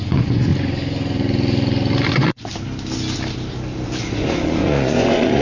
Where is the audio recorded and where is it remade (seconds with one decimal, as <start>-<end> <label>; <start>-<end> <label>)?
0.0-0.5 remade; 0.5-2.1 recorded; 2.1-2.5 remade; 2.5-4.1 recorded; 4.1-5.4 remade